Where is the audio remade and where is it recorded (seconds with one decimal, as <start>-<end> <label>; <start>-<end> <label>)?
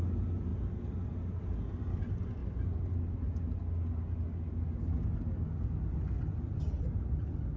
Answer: 0.0-7.6 recorded